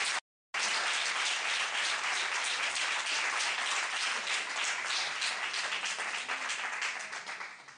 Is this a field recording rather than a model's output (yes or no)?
yes